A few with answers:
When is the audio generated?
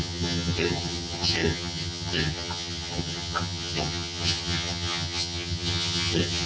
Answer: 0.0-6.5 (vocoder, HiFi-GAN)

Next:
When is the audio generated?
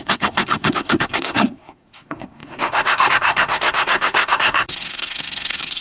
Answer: 0.0-5.8 (codec, SNAC)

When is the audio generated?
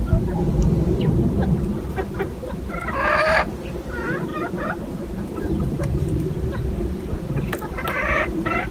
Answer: 4.3-8.7 (vocoder, BigVGAN v2)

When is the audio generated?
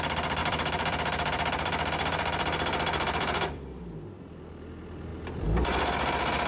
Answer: 0.4-4.3 (vocoder, BigVGAN v2)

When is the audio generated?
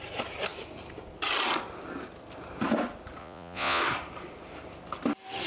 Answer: 3.2-3.8 (vocoder, Vocos)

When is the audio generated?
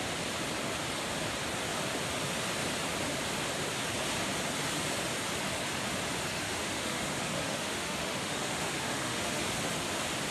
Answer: 6.3-9.4 (autoencoder, DAC-VAE)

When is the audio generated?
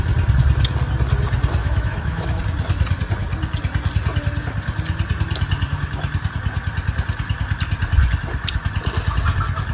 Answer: 1.6-2.4 (autoencoder, DAC-VAE)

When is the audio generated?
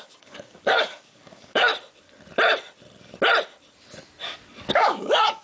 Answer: 0.0-1.7 (codec, DAC); 4.7-5.4